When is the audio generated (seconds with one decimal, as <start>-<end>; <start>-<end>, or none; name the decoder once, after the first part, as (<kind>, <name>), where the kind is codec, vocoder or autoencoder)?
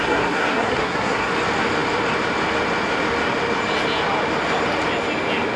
0.0-1.3 (codec, SNAC)